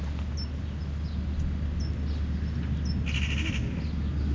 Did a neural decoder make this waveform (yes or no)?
no